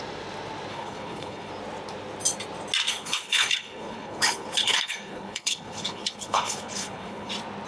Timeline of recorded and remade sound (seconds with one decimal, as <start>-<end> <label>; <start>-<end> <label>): 0.0-0.7 recorded; 0.7-1.5 remade; 1.5-2.9 recorded; 2.9-7.3 remade; 7.3-7.7 recorded

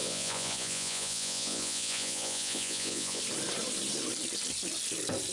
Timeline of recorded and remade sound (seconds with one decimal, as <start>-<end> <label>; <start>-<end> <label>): 0.0-3.2 remade; 3.2-5.3 recorded

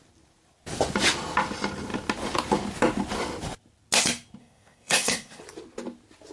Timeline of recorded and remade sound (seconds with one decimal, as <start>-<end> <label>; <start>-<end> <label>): 0.0-4.4 recorded; 4.4-5.4 remade; 5.4-6.3 recorded

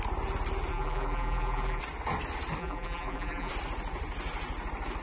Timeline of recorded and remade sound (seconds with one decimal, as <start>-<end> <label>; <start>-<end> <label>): 0.0-0.7 recorded; 0.7-1.8 remade; 1.8-2.6 recorded; 2.6-3.5 remade; 3.5-5.0 recorded

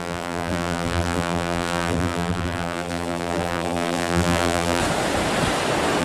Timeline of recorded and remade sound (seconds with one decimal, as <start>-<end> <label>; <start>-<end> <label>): 0.0-4.8 remade; 4.8-6.0 recorded

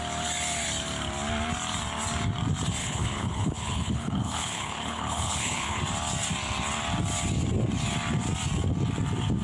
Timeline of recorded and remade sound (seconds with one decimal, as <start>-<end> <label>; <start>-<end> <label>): 0.0-2.8 recorded; 2.8-5.8 remade; 5.8-9.4 recorded